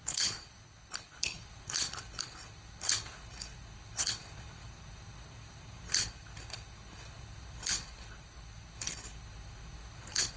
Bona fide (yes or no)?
no